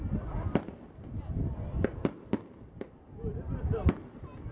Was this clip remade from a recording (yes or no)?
no